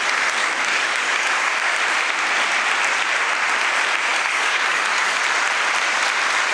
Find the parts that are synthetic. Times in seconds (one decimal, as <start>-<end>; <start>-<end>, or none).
0.4-1.8; 4.1-5.2